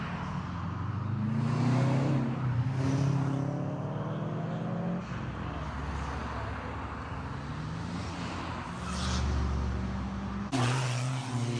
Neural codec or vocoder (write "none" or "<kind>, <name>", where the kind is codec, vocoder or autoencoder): none